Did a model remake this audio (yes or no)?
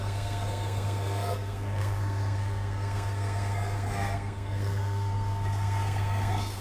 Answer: yes